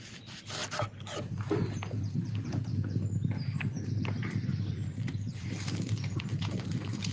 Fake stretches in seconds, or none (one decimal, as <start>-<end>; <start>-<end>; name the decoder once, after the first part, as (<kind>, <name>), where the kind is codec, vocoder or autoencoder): 0.0-0.6 (vocoder, BigVGAN v2); 2.3-2.7; 4.7-7.1